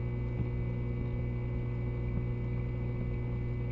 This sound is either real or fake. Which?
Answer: real